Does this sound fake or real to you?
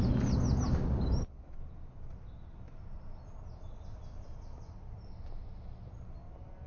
real